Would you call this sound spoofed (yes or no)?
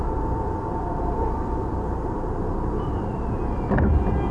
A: yes